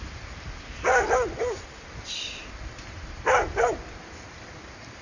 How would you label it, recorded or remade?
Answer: remade